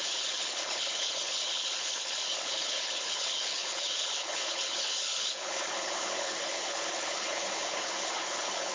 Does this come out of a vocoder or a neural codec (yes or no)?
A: yes